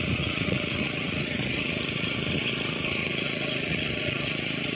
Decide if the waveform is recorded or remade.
remade